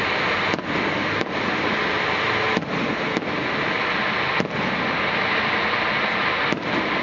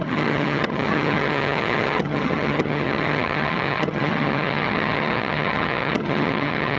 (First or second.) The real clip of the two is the first